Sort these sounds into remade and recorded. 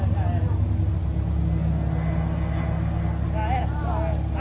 recorded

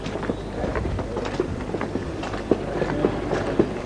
recorded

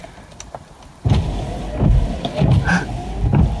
recorded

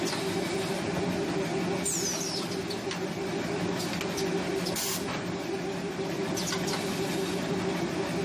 recorded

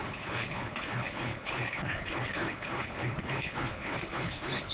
remade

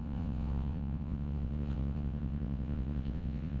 remade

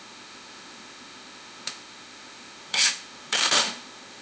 remade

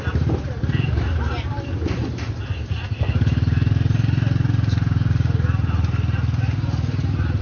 recorded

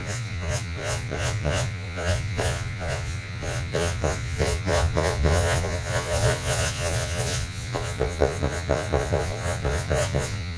remade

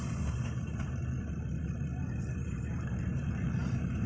remade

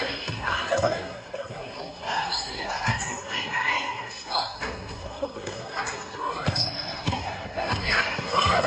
remade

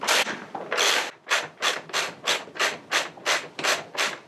remade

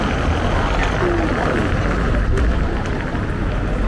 recorded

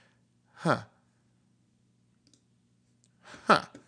recorded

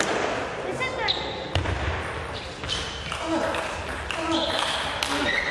recorded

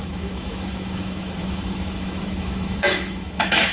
remade